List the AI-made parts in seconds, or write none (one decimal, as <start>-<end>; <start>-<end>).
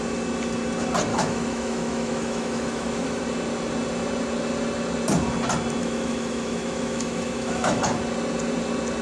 1.1-3.2; 5.8-7.8